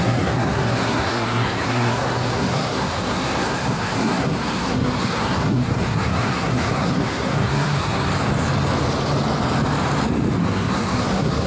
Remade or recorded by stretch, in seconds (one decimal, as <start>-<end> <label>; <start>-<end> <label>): 0.0-8.1 remade; 8.1-10.4 recorded; 10.4-11.5 remade